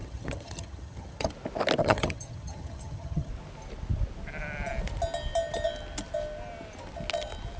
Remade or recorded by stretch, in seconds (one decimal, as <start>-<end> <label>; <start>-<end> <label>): 0.0-1.3 remade; 1.3-1.8 recorded; 1.8-3.3 remade; 3.3-7.6 recorded